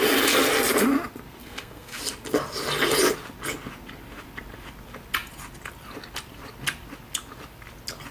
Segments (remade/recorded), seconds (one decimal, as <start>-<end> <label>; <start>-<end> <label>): 0.0-1.4 recorded; 1.4-2.0 remade; 2.0-8.1 recorded